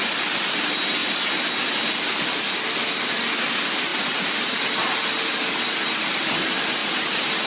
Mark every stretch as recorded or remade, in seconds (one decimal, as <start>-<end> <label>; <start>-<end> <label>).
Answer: 0.0-3.9 recorded; 3.9-5.2 remade; 5.2-6.8 recorded; 6.8-7.5 remade